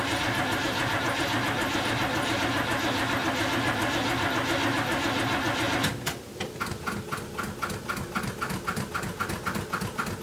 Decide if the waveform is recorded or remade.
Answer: recorded